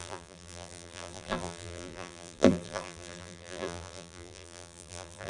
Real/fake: fake